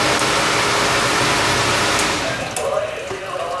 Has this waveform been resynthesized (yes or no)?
no